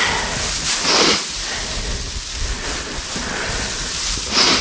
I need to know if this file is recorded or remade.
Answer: recorded